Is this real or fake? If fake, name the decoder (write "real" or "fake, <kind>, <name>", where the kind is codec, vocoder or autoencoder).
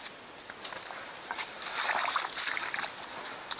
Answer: real